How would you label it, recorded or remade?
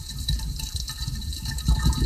remade